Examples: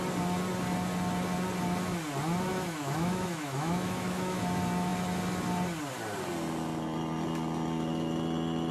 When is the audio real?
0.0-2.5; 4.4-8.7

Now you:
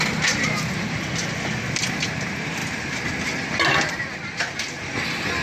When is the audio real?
0.0-5.4

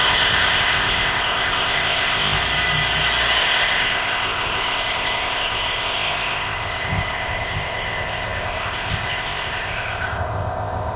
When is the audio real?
2.4-3.4

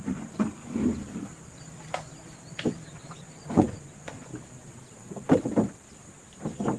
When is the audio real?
0.8-3.0; 4.3-6.8

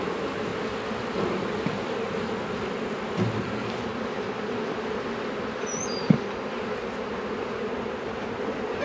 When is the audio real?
0.5-3.4; 3.9-7.6